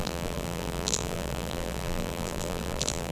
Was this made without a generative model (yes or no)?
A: no